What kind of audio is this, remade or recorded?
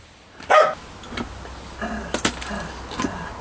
recorded